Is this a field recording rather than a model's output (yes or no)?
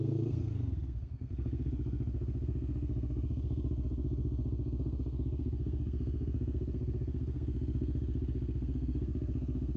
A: no